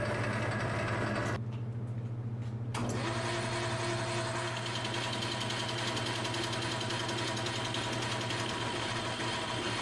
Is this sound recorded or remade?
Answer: recorded